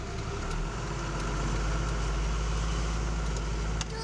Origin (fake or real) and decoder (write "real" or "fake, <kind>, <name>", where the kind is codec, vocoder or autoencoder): real